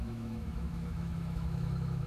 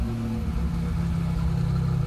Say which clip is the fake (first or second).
first